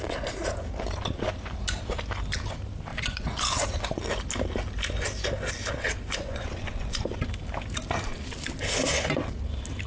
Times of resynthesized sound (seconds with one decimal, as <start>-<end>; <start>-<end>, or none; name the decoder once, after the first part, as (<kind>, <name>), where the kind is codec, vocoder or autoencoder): 2.9-4.0 (vocoder, Vocos); 6.2-7.0